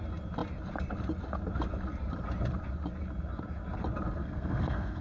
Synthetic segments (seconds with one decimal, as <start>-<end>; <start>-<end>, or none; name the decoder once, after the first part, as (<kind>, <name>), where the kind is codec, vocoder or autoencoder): 4.2-5.0 (codec, SNAC)

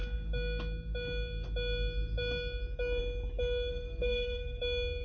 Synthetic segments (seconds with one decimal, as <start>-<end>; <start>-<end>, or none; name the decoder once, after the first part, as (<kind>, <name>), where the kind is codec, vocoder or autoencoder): 3.7-4.6 (codec, SNAC)

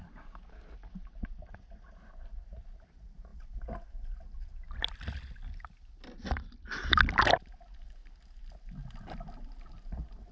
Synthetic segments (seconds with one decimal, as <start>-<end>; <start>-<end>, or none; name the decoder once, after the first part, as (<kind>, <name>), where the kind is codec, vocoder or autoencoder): none

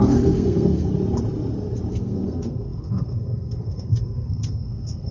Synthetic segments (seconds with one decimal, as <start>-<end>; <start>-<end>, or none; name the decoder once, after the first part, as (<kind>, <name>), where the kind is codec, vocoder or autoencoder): 0.0-0.9 (codec, SNAC); 1.9-5.1

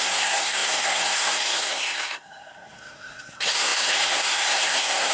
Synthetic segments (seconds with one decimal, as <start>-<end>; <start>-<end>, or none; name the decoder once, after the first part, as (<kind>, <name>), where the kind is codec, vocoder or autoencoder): 0.0-5.1 (codec, SNAC)

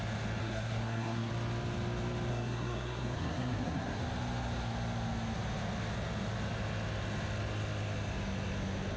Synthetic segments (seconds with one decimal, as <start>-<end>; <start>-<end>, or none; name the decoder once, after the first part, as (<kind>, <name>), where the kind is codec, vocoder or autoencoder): 0.4-1.3 (codec, SNAC); 2.3-4.0

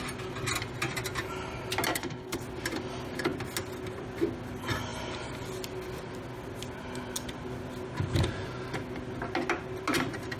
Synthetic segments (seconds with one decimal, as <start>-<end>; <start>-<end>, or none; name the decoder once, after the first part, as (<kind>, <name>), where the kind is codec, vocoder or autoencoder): 1.9-2.4 (codec, SNAC)

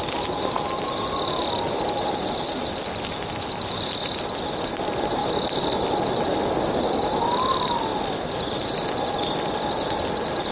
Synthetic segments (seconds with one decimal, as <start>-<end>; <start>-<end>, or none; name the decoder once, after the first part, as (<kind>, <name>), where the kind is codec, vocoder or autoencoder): none